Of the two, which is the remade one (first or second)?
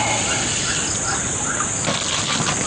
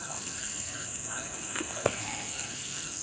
second